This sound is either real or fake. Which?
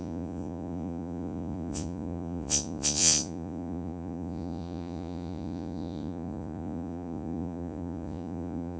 fake